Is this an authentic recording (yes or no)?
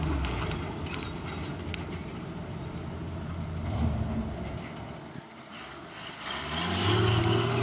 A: yes